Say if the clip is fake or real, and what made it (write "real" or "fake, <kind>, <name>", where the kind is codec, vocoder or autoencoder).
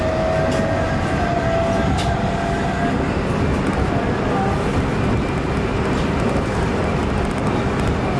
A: real